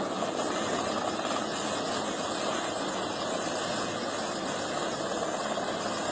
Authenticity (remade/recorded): recorded